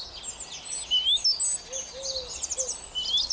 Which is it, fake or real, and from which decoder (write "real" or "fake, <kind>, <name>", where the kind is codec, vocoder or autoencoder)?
real